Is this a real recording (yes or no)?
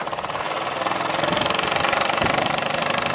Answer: no